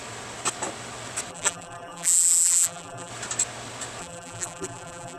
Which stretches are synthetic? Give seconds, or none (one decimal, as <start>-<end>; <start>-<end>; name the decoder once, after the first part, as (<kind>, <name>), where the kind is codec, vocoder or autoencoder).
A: 1.3-3.1 (vocoder, BigVGAN v2); 4.0-5.2